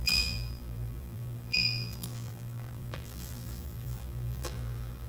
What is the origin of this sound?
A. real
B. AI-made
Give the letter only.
B